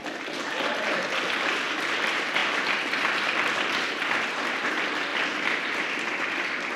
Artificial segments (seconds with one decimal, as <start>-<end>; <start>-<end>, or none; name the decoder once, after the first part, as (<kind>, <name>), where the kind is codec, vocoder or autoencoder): 0.0-0.9 (vocoder, BigVGAN v2); 5.1-5.9